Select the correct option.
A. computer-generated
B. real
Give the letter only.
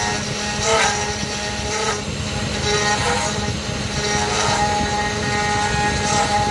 B